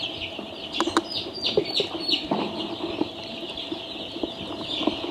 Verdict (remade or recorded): recorded